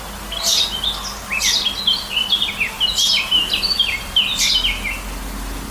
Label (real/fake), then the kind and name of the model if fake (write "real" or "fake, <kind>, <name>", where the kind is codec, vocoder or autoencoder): real